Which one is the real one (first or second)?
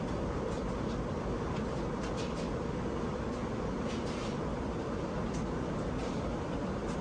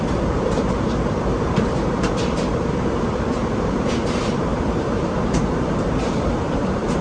first